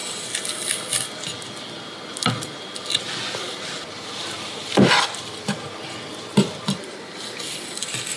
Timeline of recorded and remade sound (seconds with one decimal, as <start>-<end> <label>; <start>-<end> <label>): 0.0-8.2 recorded